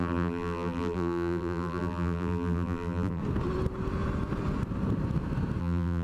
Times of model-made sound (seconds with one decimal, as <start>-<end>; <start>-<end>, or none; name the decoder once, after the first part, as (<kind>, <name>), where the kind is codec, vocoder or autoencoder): 0.0-3.2 (vocoder, BigVGAN v2); 5.6-6.0

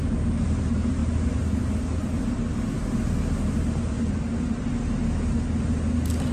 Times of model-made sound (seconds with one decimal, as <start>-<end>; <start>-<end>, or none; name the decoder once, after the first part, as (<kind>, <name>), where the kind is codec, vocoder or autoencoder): none

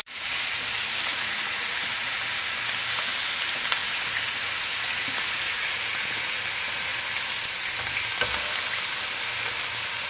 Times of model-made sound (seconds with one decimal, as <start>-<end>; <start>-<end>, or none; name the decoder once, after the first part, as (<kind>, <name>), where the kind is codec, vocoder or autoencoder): 1.1-2.2 (vocoder, Vocos); 3.8-6.4

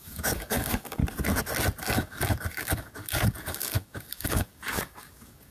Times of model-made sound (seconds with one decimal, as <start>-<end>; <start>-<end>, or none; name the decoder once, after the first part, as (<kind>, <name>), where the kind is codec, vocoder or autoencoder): 0.0-1.0 (codec, DAC); 1.8-5.5

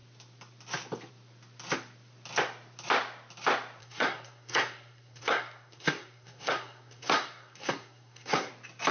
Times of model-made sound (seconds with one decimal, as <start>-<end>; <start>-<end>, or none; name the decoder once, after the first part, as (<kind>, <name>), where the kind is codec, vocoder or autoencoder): 3.8-8.5 (codec, SNAC)

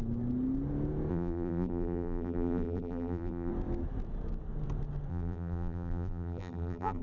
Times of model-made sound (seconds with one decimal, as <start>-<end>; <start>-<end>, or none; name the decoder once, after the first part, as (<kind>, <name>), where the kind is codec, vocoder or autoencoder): 1.1-3.5 (vocoder, BigVGAN v2); 5.1-7.0

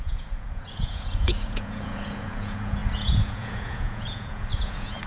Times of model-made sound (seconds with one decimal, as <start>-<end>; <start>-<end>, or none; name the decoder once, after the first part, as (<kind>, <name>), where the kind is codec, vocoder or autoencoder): 0.0-5.1 (vocoder, Vocos)

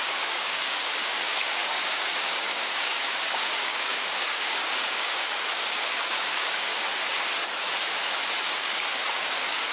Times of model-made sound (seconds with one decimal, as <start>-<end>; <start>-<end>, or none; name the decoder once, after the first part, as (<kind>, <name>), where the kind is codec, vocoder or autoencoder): 0.0-6.7 (codec, DAC); 8.5-9.7